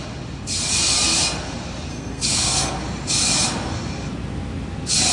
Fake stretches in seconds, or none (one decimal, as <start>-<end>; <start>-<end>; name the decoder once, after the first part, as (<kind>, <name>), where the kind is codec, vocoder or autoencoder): 1.9-2.7 (codec, SNAC)